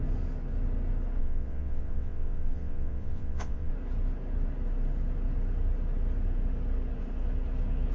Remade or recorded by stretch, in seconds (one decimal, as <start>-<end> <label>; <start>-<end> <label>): 0.0-1.2 recorded; 1.2-3.7 remade; 3.7-7.9 recorded

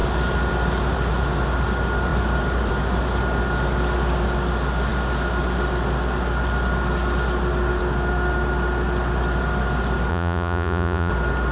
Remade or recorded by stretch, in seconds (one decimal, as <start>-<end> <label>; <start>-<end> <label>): 0.0-10.1 recorded; 10.1-11.1 remade; 11.1-11.5 recorded

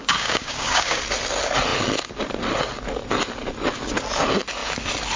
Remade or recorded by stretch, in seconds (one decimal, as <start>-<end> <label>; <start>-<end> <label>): 0.0-1.0 remade; 1.0-5.2 recorded

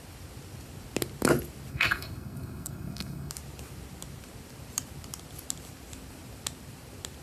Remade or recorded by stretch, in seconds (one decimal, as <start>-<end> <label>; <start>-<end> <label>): 0.0-1.7 recorded; 1.7-3.3 remade; 3.3-7.2 recorded